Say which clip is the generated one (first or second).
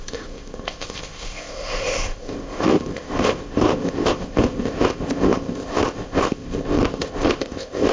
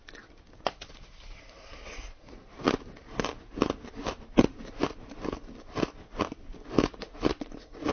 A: first